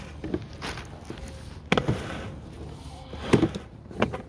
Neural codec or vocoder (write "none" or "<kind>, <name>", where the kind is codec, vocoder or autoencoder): none